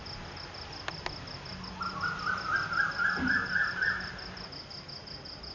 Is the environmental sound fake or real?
real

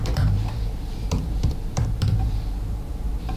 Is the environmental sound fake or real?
fake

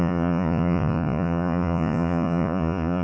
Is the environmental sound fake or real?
fake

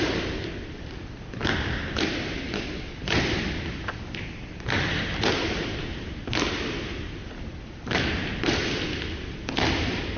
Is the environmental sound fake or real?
fake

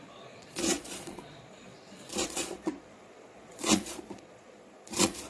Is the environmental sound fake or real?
fake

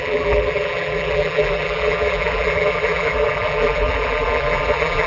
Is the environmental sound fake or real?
fake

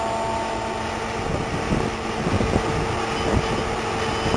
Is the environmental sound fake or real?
real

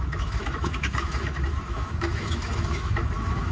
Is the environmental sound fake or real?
fake